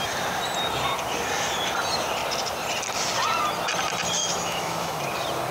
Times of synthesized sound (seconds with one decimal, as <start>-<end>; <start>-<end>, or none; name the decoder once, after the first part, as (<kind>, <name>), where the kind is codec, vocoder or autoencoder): 4.2-5.0 (autoencoder, DAC-VAE)